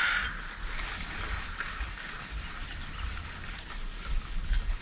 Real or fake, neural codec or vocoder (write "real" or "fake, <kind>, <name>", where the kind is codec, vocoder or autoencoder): real